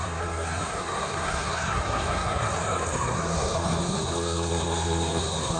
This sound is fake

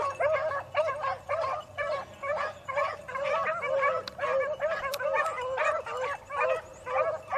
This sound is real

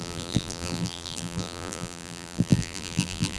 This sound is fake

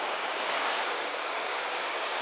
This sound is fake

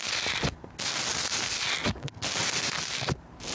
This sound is real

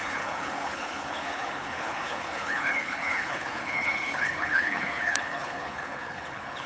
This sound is fake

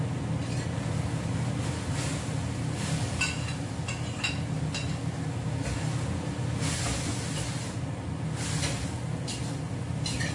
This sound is real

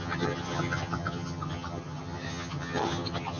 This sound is fake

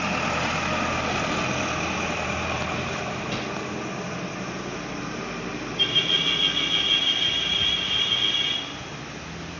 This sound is real